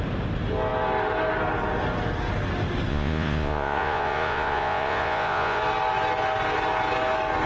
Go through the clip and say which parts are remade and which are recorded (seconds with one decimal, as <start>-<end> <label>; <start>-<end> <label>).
0.0-2.9 recorded; 2.9-5.6 remade; 5.6-7.5 recorded